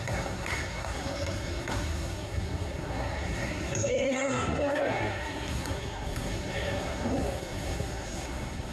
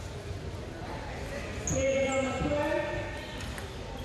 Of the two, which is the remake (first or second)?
first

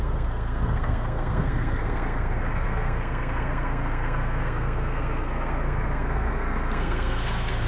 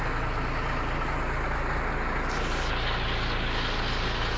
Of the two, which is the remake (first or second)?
first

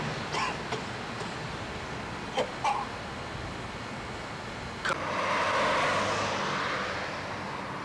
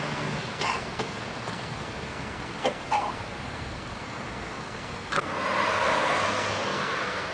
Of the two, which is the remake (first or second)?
second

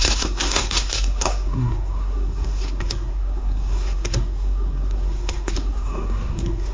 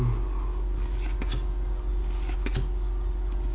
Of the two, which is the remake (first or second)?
first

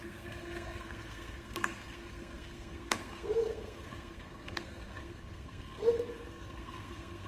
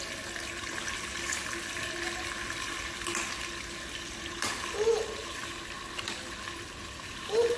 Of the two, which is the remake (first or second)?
first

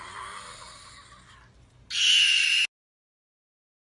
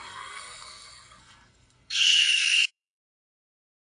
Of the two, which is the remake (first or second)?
second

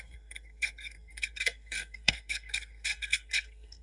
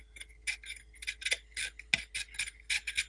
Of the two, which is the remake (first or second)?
first